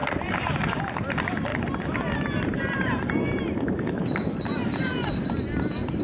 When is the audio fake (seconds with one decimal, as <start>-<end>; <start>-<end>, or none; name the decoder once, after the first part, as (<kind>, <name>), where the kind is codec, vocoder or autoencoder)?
0.0-0.8 (vocoder, BigVGAN v2); 1.5-5.1